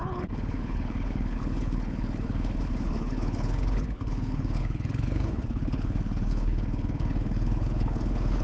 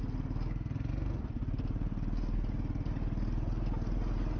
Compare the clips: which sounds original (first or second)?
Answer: second